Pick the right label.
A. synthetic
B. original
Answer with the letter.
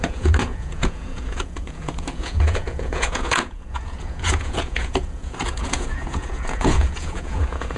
A